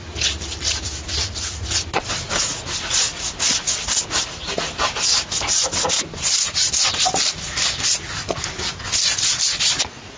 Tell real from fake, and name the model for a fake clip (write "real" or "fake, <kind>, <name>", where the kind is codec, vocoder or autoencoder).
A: real